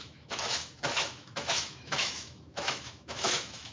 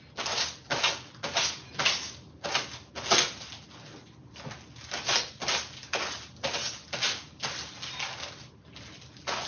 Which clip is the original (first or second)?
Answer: second